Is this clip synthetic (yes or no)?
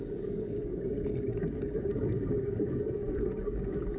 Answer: yes